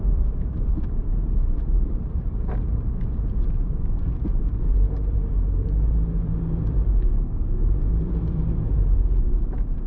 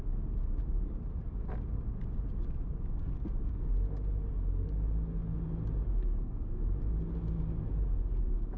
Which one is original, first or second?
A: second